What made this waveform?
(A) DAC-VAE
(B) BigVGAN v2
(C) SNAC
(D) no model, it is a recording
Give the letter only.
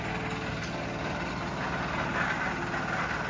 D